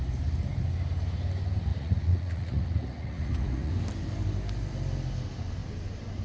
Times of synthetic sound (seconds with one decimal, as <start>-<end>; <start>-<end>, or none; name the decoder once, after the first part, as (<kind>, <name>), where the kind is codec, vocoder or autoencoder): 1.7-3.7 (vocoder, Vocos)